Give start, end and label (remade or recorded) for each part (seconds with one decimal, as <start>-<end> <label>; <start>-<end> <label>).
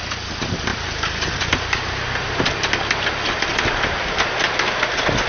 0.0-5.3 recorded